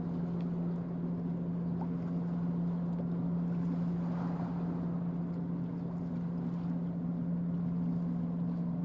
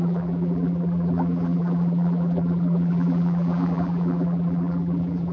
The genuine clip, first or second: first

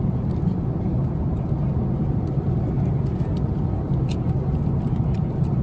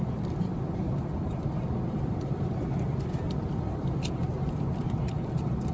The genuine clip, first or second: first